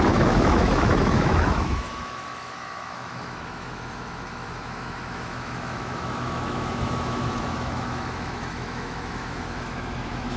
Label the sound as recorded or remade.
remade